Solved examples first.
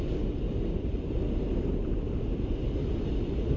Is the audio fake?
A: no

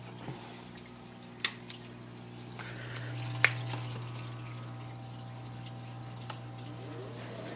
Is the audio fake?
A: no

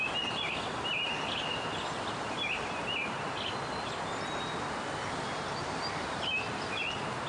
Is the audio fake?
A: no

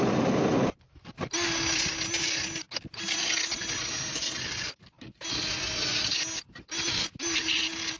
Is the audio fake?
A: no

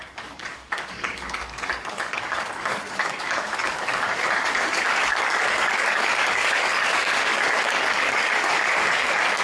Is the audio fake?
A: yes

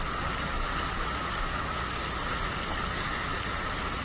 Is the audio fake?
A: no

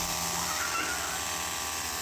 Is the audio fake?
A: no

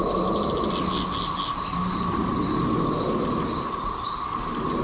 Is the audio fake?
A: no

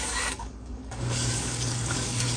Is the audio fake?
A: yes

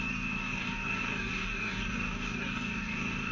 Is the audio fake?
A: yes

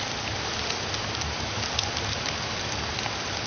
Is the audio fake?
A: no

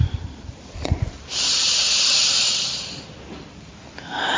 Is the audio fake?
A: no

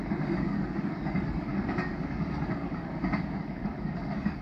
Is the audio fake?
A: yes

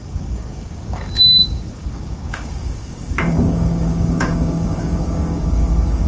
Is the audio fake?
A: yes